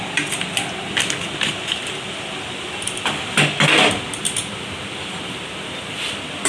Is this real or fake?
real